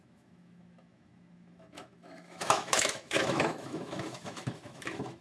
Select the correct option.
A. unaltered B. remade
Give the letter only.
B